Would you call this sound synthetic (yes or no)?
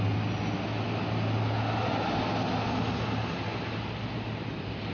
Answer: no